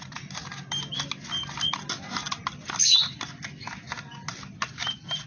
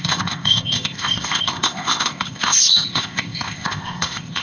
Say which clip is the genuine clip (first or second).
first